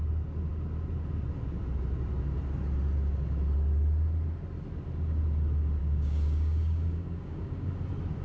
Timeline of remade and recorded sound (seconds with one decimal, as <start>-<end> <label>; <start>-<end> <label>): 0.0-5.8 recorded; 5.8-7.7 remade; 7.7-8.2 recorded